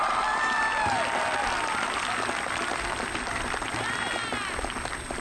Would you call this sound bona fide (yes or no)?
yes